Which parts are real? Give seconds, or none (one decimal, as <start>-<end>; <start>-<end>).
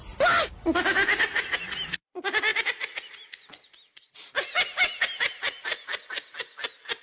0.0-7.0